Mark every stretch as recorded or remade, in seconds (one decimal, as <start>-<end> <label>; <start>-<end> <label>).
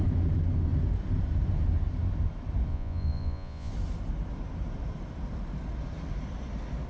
0.0-2.7 recorded; 2.7-3.7 remade; 3.7-6.9 recorded